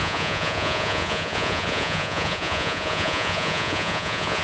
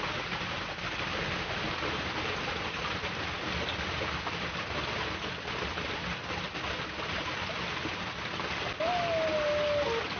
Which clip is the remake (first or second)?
first